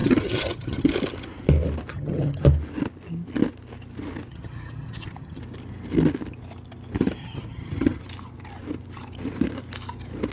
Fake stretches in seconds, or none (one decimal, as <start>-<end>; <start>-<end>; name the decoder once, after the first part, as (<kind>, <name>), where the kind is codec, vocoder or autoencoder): 0.0-0.9 (vocoder, HiFi-GAN); 1.9-2.4; 4.3-5.4; 7.2-8.0